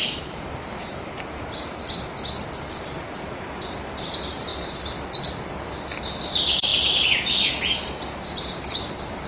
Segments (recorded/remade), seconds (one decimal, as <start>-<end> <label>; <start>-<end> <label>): 0.0-1.8 remade; 1.8-2.7 recorded; 2.7-4.5 remade; 4.5-6.0 recorded; 6.0-9.3 remade